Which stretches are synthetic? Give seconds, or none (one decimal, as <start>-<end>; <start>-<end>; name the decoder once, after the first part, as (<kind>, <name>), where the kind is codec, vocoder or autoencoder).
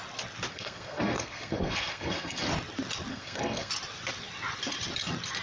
0.5-2.5 (codec, SNAC); 3.1-3.7